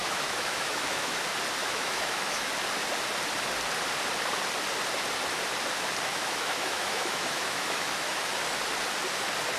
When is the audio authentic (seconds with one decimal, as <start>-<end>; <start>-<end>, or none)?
1.2-1.6; 2.5-6.1; 8.3-9.6